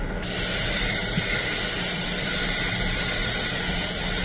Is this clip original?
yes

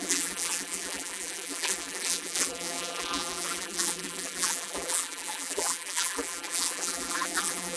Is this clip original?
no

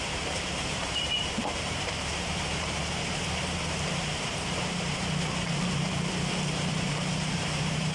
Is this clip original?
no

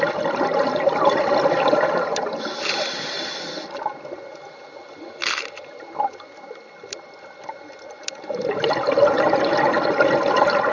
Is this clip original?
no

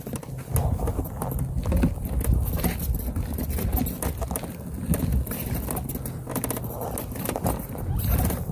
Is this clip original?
yes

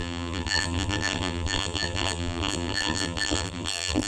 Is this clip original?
no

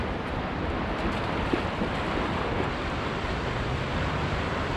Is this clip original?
yes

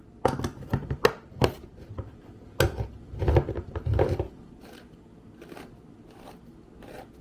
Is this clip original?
yes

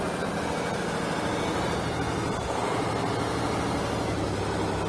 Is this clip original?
yes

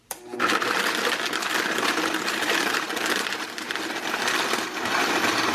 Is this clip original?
no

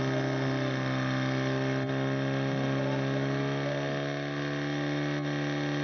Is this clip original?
yes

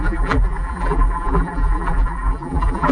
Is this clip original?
no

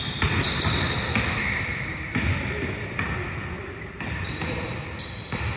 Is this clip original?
no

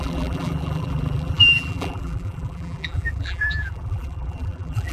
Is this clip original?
no